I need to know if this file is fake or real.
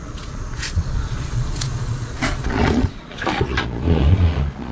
fake